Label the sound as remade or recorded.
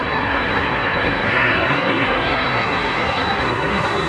remade